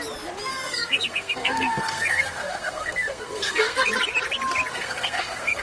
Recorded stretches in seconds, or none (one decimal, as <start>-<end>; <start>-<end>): 0.0-0.5; 3.9-4.7